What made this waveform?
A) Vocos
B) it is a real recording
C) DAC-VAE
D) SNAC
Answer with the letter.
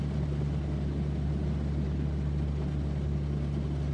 B